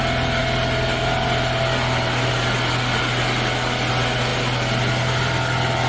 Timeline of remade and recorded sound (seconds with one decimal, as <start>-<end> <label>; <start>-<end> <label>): 0.0-5.9 recorded